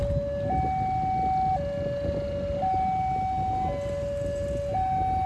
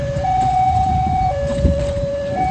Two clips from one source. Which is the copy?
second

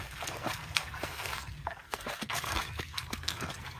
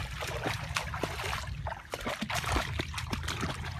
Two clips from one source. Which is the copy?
first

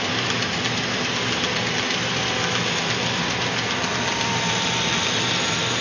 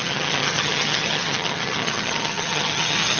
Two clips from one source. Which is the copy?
second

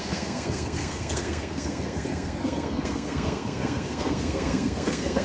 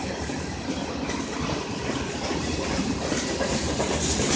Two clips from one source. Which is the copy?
first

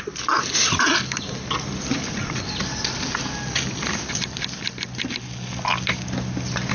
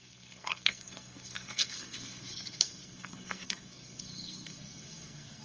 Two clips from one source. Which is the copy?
second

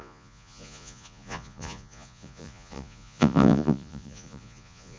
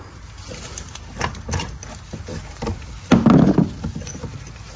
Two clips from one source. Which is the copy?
first